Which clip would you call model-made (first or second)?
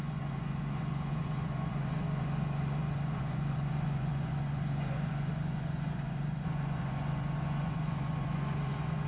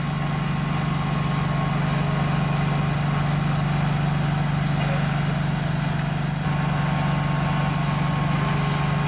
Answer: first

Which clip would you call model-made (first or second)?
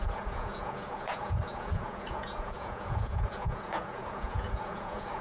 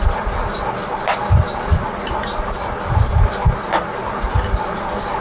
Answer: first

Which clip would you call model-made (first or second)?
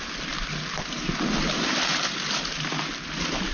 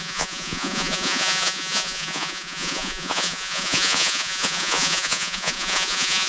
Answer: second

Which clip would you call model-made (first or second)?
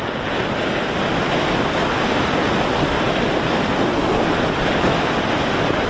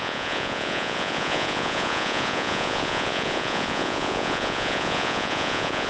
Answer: second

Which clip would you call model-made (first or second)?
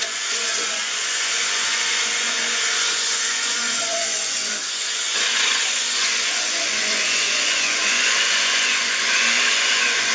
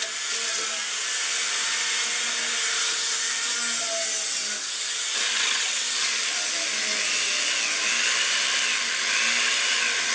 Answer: first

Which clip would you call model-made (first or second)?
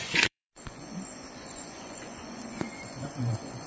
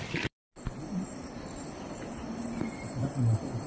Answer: first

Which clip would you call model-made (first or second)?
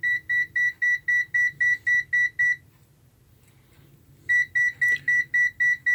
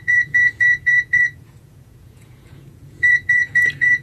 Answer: second